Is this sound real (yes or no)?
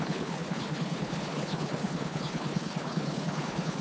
no